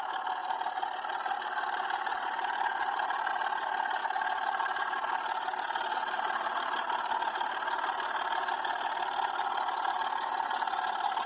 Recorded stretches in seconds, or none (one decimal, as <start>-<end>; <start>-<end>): 0.0-0.4; 3.3-4.0; 7.3-11.3